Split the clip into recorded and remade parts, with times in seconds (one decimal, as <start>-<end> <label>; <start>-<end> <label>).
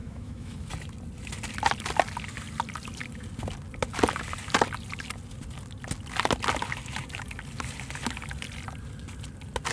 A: 0.0-0.7 remade; 0.7-9.7 recorded